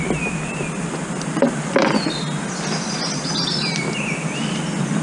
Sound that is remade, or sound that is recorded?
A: recorded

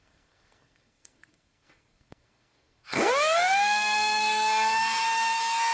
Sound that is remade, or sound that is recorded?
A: remade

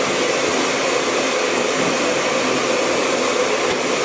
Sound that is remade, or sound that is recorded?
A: recorded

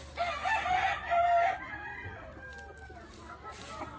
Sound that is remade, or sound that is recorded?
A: recorded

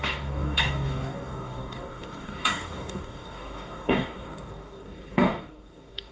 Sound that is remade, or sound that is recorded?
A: remade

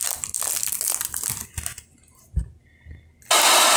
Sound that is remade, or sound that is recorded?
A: recorded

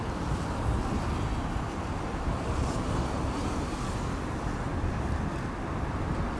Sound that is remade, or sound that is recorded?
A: recorded